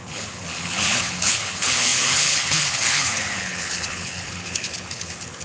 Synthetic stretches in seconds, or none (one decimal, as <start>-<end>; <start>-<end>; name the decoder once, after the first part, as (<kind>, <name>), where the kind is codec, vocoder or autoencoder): 0.0-5.4 (codec, HILCodec)